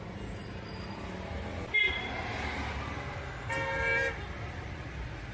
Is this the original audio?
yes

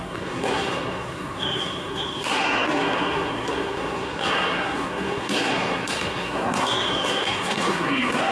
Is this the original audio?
no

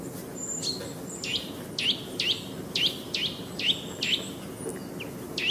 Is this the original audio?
yes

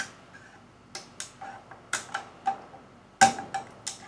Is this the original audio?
yes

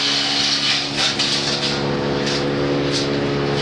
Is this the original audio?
yes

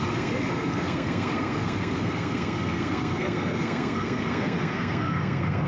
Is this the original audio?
no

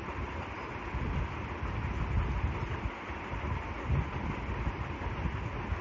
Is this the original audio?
yes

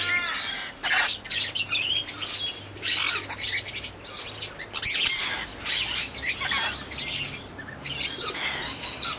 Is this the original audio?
yes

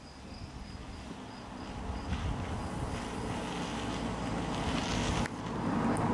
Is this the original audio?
yes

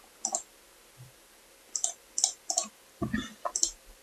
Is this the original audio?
yes